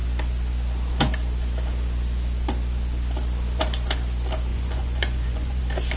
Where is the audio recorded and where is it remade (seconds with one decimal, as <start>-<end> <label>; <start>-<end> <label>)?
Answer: 0.0-4.5 recorded; 4.5-5.6 remade; 5.6-6.0 recorded